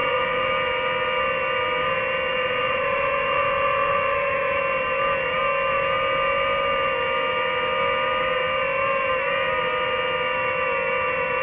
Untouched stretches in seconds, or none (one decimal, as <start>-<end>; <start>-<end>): 0.5-2.3; 4.6-11.4